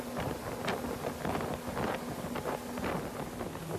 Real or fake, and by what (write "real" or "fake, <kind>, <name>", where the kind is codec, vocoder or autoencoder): real